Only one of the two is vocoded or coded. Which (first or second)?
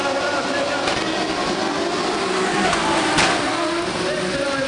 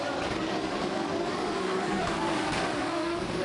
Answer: second